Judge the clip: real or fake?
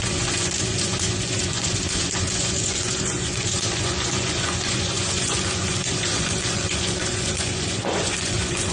fake